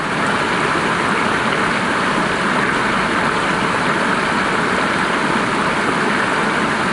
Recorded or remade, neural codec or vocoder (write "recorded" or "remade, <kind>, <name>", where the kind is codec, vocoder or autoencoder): recorded